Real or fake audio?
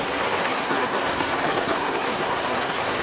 fake